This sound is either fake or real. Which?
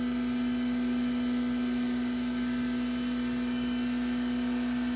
real